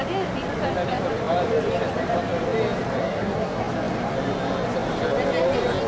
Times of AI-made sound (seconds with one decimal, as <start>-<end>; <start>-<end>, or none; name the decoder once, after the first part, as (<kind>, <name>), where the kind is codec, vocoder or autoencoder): 3.0-3.6 (codec, SNAC)